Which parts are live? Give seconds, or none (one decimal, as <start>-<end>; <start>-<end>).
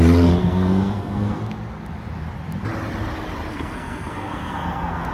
0.0-0.4; 1.4-3.5